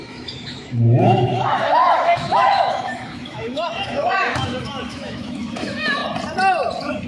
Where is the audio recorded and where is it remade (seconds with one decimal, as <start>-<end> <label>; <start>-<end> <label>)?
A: 0.0-6.0 remade; 6.0-7.1 recorded